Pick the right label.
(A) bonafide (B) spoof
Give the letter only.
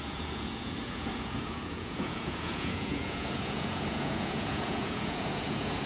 B